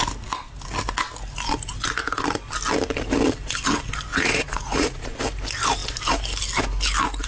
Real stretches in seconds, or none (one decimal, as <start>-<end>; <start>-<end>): 0.0-4.1; 5.2-7.3